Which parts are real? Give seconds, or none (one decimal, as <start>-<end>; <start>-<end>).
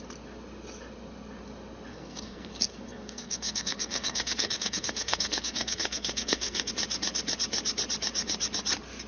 0.0-1.9; 6.7-9.1